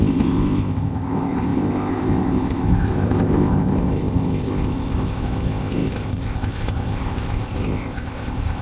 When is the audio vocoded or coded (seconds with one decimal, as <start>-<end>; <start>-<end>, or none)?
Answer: 0.0-8.6